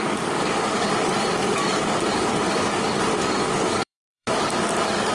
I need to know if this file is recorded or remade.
remade